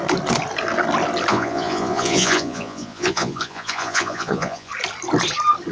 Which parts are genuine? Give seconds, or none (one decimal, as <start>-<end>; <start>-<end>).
0.0-1.3; 4.7-5.7